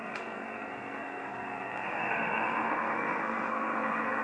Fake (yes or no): yes